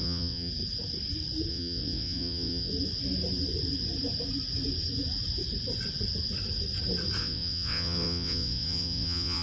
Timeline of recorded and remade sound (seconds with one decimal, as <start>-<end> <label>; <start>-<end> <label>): 0.0-0.5 remade; 0.5-1.5 recorded; 1.5-2.7 remade; 2.7-7.2 recorded; 7.2-9.4 remade